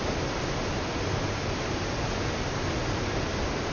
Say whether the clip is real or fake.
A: real